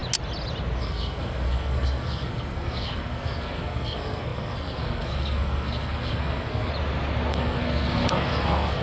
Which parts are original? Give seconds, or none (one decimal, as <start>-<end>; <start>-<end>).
0.0-0.8; 6.7-7.3